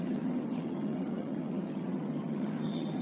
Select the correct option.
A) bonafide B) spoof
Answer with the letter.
B